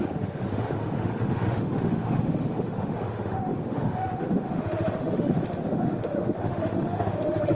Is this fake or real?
fake